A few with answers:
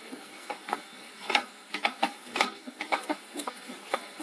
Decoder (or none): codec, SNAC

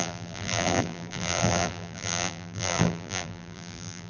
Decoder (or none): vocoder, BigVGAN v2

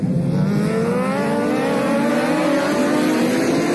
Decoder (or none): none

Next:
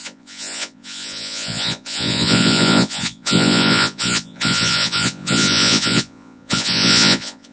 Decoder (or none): vocoder, Vocos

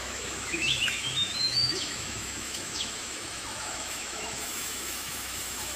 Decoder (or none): autoencoder, DAC-VAE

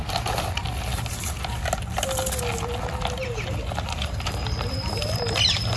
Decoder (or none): none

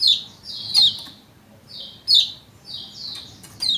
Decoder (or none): none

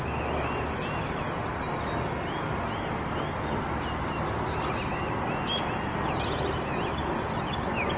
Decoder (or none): none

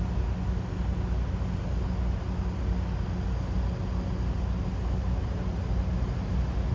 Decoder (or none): none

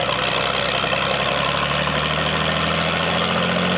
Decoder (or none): none